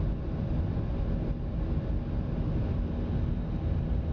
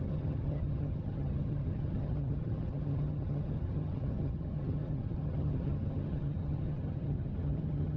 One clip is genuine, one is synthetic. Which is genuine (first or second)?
first